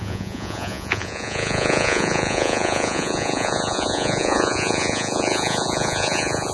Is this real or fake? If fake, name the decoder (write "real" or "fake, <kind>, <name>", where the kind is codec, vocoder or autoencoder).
fake, vocoder, Vocos